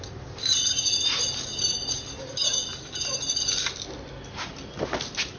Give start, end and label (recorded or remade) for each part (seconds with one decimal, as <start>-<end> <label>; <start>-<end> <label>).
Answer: 0.0-5.4 recorded